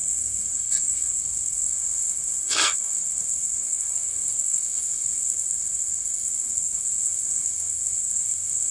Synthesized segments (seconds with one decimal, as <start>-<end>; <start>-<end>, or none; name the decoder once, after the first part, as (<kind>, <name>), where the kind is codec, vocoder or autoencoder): 0.0-8.7 (codec, SNAC)